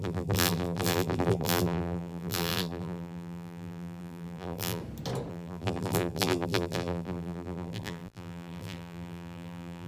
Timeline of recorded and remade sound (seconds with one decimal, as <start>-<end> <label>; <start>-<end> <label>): 0.0-4.8 remade; 4.8-5.3 recorded; 5.3-9.9 remade